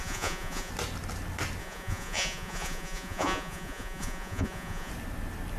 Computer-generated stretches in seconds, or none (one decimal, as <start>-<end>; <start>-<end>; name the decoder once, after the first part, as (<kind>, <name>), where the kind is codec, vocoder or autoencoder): 0.0-0.7 (vocoder, Vocos); 1.6-4.9